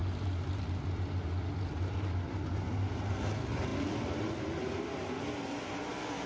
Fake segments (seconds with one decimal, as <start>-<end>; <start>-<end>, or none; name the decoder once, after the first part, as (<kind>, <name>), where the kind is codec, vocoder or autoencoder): none